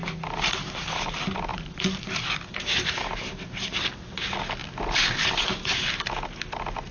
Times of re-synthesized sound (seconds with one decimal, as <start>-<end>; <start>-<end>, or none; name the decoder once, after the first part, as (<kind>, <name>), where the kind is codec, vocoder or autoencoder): 0.0-0.8 (vocoder, BigVGAN v2); 1.5-3.8

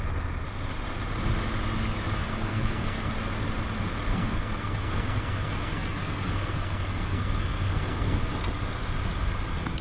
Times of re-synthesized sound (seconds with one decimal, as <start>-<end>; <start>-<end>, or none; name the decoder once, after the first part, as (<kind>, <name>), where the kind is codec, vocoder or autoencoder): 2.2-3.1 (codec, SNAC); 4.1-8.3

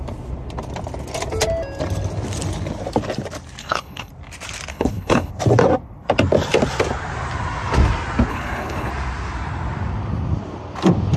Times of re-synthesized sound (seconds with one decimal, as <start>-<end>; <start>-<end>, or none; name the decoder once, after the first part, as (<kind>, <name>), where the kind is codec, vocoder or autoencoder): 3.6-4.1 (codec, HILCodec); 4.7-5.3; 8.3-8.9

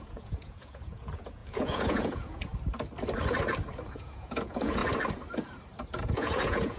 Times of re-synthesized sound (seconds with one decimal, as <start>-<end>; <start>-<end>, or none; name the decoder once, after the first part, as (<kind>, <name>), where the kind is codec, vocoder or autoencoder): 0.0-2.5 (vocoder, Vocos); 4.0-4.8; 6.0-6.8

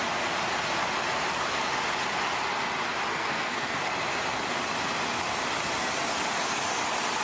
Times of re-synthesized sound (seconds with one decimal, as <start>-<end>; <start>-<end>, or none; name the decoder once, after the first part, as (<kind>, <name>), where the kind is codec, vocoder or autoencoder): 3.1-3.8 (codec, SNAC)

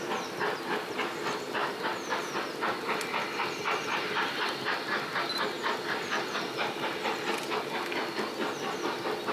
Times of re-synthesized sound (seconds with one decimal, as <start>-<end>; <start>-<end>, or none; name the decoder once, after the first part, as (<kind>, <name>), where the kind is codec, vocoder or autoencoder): none